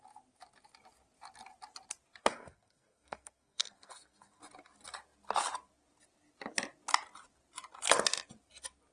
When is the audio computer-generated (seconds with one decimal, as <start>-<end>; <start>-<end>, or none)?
2.2-4.4

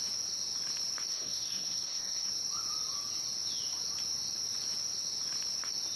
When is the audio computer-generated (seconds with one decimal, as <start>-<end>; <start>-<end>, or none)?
1.1-2.3